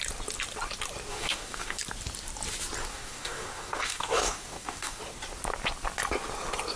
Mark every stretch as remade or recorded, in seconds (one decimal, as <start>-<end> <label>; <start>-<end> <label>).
0.0-1.1 recorded; 1.1-1.8 remade; 1.8-2.9 recorded; 2.9-5.0 remade; 5.0-6.8 recorded